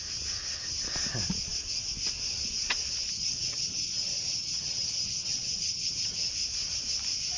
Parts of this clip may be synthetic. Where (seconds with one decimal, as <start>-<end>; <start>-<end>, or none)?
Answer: 3.1-6.3